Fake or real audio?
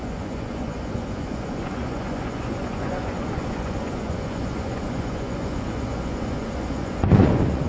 fake